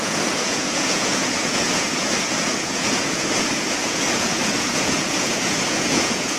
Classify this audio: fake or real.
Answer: fake